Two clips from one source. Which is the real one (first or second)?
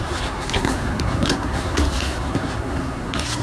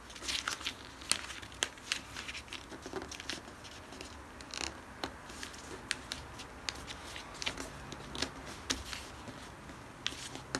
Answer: second